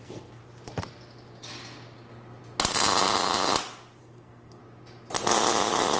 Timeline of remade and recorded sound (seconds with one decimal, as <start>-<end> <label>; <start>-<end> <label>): 0.0-0.4 remade; 0.4-4.0 recorded; 4.0-4.6 remade; 4.6-6.0 recorded